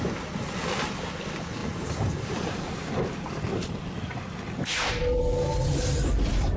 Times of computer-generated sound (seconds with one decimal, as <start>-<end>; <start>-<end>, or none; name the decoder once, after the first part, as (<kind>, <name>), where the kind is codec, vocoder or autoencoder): 1.6-3.8 (vocoder, BigVGAN v2)